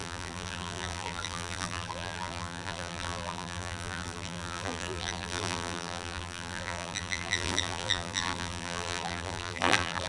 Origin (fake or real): fake